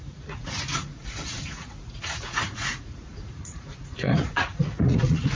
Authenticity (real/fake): fake